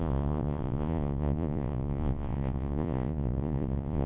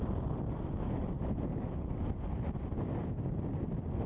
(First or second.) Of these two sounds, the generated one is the first